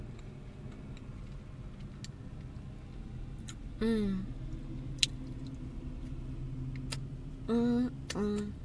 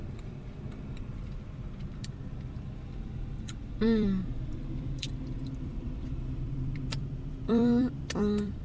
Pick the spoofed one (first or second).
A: second